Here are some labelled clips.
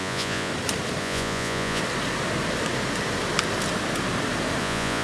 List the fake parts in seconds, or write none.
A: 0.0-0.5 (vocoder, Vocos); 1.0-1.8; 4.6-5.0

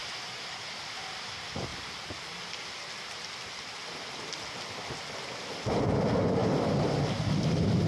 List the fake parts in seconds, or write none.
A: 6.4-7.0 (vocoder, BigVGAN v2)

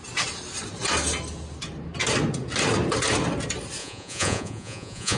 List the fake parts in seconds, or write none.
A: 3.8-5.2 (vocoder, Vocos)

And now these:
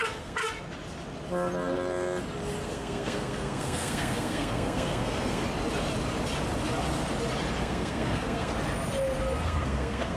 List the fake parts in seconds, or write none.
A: 0.0-0.4 (codec, SNAC); 2.6-5.4; 7.6-8.5; 9.4-10.2

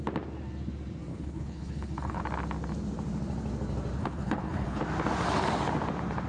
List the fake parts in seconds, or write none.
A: 1.1-2.2 (codec, HILCodec); 4.0-4.8